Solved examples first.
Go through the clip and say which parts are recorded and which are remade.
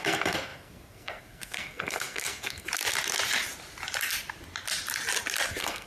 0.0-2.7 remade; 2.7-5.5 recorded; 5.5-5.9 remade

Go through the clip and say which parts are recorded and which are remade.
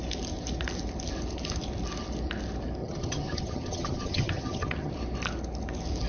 0.0-2.8 recorded; 2.8-4.9 remade; 4.9-6.1 recorded